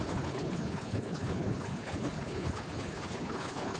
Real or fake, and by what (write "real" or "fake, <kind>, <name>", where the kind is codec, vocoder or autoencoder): fake, codec, HILCodec